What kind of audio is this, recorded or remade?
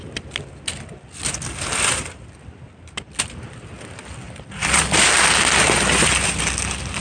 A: recorded